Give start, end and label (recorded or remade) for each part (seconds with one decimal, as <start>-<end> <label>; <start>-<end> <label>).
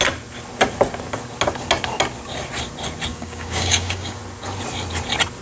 0.0-3.1 recorded; 3.1-4.2 remade; 4.2-5.4 recorded